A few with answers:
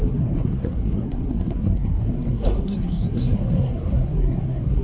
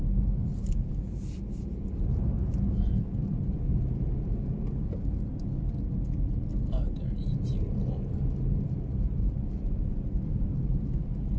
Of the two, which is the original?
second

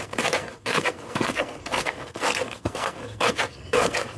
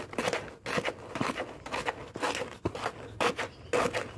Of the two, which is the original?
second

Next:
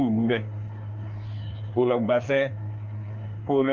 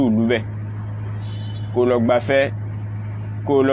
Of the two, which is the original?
second